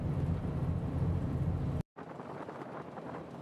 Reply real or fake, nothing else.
fake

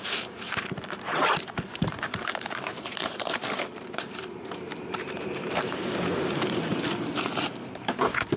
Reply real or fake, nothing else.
fake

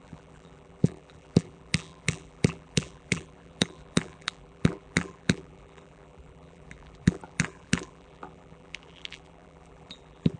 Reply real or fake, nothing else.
fake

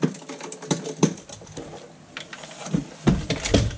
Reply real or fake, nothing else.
real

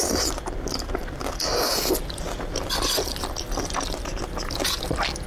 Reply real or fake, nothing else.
real